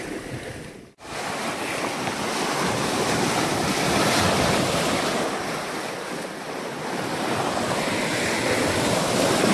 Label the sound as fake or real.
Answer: real